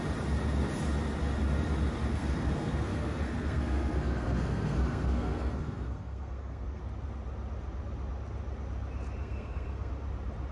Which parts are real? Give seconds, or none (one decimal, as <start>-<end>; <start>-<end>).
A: 0.0-2.1; 6.8-9.2; 9.9-10.5